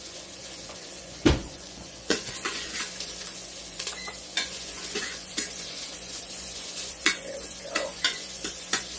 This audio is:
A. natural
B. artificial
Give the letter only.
B